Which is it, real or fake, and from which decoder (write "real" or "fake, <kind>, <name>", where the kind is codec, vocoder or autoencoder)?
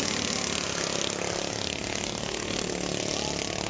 real